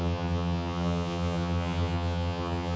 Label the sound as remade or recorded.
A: remade